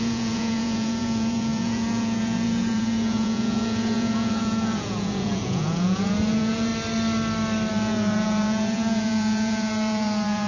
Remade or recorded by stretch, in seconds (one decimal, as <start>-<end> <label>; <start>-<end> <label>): 0.0-6.7 remade; 6.7-7.7 recorded; 7.7-10.5 remade